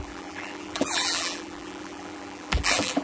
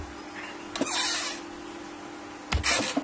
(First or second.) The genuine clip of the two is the second